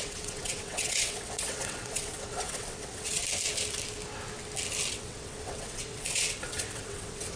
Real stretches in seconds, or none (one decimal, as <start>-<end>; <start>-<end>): 3.2-4.9

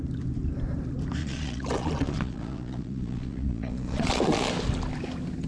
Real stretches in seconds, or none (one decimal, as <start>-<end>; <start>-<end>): 0.0-1.2; 4.5-5.5